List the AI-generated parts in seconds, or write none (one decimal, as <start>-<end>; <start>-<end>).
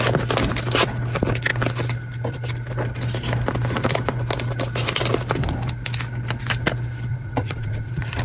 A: 7.1-8.2